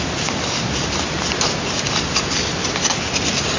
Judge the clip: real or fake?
fake